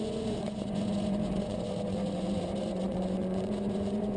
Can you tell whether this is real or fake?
fake